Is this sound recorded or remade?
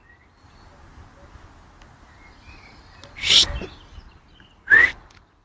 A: recorded